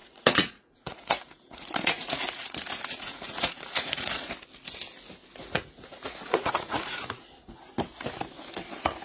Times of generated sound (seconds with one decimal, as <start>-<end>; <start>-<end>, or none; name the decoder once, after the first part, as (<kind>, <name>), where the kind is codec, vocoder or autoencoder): 0.0-4.3 (vocoder, Vocos); 5.4-7.2